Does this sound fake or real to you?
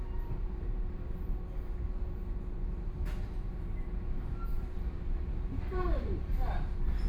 fake